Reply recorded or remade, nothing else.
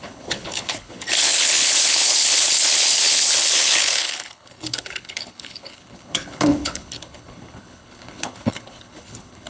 remade